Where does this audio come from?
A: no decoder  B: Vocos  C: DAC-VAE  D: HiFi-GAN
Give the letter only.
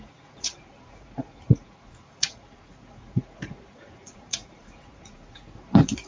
B